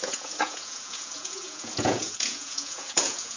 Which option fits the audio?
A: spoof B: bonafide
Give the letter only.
A